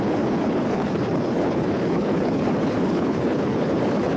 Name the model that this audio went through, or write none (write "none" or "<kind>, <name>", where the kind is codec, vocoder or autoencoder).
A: codec, HILCodec